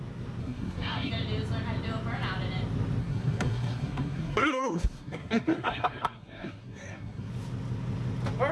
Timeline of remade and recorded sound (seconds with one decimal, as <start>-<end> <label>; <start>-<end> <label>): 0.0-0.4 recorded; 0.4-1.1 remade; 1.1-3.0 recorded; 3.0-7.3 remade; 7.3-8.5 recorded